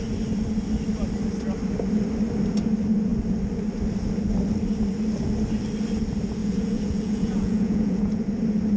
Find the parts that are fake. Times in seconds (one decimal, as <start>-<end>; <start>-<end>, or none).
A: 6.4-8.2